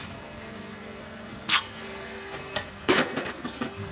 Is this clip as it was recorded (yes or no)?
no